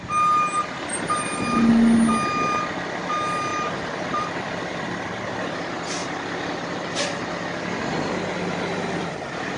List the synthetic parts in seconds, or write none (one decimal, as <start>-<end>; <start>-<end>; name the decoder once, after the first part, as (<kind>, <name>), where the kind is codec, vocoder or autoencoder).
3.5-5.6 (vocoder, BigVGAN v2); 8.7-9.6